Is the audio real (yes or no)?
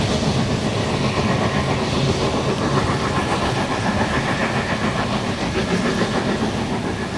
yes